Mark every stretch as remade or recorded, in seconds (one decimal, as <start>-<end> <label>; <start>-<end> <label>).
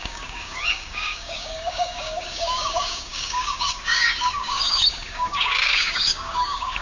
0.0-6.8 remade